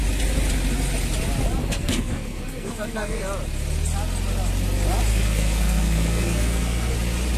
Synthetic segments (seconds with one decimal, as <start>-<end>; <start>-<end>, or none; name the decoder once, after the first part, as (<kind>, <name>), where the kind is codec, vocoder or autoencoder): 1.6-3.2 (codec, SNAC); 5.1-6.9